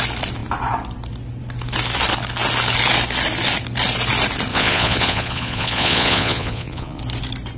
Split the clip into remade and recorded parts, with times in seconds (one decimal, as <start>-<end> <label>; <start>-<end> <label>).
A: 0.0-4.5 recorded; 4.5-7.0 remade; 7.0-7.6 recorded